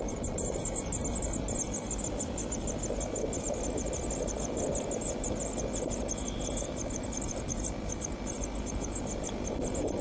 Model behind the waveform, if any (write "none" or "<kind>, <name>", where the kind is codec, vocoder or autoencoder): none